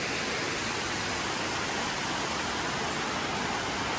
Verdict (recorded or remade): recorded